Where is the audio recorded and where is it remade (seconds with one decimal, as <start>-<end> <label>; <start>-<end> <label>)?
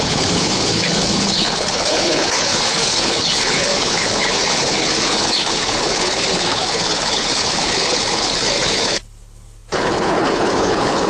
0.0-11.1 remade